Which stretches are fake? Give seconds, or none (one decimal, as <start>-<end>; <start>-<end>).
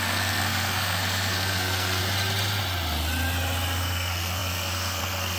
0.0-2.0; 3.8-5.4